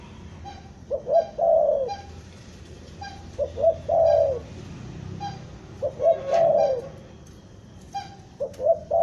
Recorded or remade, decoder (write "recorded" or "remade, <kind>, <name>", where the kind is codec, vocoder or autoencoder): remade, vocoder, BigVGAN v2